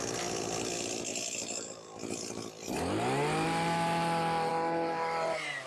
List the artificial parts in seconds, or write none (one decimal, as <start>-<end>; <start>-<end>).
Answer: none